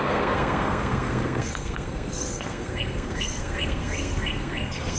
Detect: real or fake fake